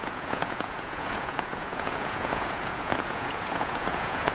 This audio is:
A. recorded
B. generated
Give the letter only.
B